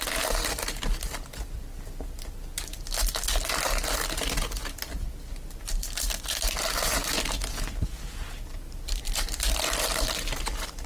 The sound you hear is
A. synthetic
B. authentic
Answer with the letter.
B